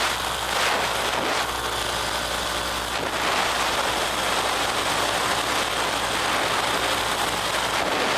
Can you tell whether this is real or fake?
real